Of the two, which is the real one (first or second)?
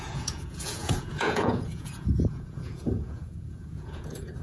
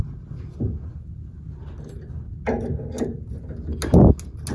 second